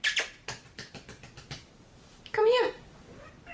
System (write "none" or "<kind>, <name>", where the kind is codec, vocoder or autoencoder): none